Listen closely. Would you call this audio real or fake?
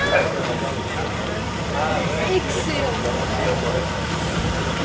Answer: real